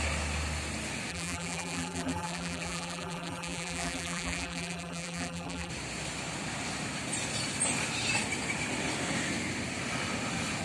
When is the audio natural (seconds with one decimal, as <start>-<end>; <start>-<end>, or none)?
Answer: 0.0-1.1; 5.7-10.6